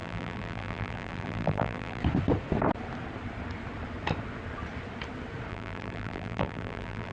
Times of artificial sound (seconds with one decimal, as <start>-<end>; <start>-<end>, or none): 0.0-2.0; 5.5-7.1